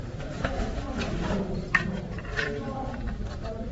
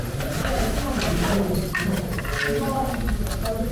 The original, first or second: second